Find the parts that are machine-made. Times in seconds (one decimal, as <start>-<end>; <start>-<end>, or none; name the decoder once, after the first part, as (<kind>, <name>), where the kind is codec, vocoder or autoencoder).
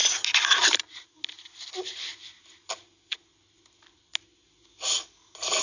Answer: none